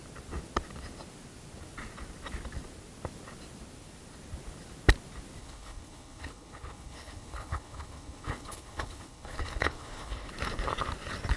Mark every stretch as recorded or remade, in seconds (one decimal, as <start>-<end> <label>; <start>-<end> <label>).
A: 0.0-5.4 recorded; 5.4-10.3 remade; 10.3-11.4 recorded